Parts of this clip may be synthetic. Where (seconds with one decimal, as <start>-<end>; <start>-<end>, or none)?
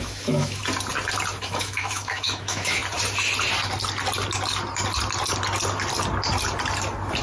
0.0-0.6; 1.4-2.8